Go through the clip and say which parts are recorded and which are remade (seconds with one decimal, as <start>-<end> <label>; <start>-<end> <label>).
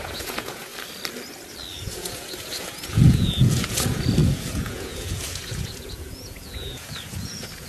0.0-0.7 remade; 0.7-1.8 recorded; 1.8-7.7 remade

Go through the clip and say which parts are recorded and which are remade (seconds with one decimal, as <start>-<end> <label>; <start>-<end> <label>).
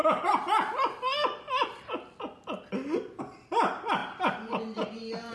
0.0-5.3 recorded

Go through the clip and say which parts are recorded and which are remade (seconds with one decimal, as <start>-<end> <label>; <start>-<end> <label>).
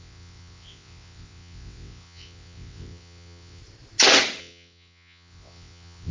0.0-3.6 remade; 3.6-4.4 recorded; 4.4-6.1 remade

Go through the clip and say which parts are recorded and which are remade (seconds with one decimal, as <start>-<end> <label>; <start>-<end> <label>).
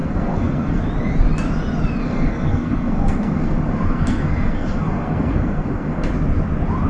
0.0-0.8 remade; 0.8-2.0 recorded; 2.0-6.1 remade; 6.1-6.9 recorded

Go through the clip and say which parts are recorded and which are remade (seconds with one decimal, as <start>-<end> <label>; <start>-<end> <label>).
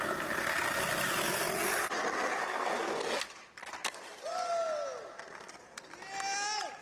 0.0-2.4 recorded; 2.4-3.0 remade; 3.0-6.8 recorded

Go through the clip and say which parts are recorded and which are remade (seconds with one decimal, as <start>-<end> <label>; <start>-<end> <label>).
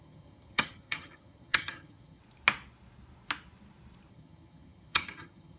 0.0-2.2 remade; 2.2-4.1 recorded; 4.1-5.6 remade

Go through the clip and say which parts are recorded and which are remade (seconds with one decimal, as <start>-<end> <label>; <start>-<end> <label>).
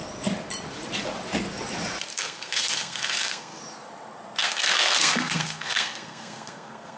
0.0-2.1 recorded; 2.1-3.6 remade; 3.6-4.4 recorded; 4.4-7.0 remade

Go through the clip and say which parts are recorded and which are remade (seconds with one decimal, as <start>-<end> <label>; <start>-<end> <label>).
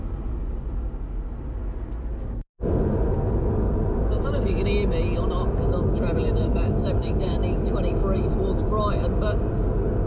0.0-10.1 recorded